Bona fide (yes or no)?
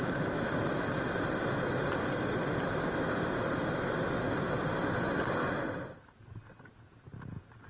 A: yes